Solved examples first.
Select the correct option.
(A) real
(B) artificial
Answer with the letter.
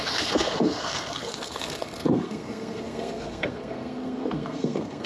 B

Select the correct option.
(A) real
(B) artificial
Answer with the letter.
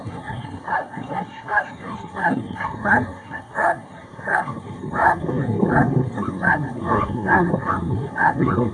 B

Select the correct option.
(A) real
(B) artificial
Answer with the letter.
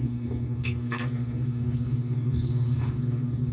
B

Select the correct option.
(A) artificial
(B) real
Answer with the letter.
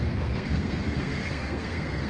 A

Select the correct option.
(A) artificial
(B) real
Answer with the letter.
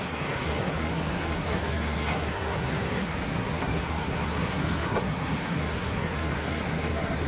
A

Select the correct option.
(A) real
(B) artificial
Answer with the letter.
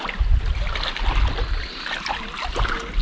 A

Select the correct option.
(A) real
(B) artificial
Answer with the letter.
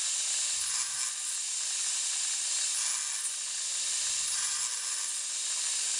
A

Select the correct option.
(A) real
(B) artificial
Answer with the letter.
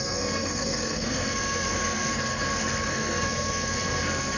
B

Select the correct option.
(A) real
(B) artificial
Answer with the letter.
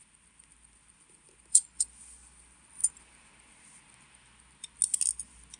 A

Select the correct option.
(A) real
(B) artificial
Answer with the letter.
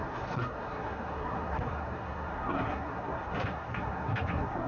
B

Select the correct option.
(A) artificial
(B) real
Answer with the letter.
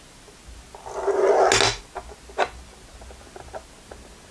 B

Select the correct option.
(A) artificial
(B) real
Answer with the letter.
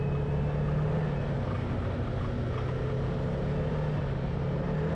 B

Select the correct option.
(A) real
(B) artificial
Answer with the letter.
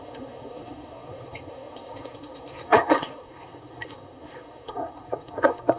B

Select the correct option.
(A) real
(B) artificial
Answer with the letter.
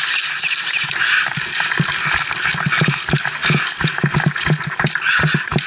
A